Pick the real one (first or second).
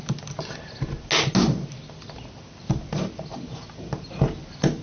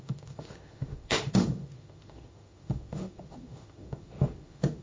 first